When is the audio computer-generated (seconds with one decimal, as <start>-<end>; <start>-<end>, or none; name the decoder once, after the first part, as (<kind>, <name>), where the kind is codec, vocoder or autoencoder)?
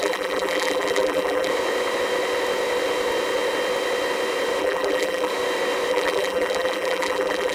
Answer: 0.0-1.5 (vocoder, BigVGAN v2); 4.6-5.3; 5.9-7.5